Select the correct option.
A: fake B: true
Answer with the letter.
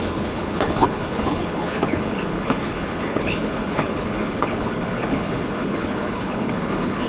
A